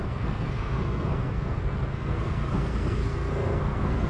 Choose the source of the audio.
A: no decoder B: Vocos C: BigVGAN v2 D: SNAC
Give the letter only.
D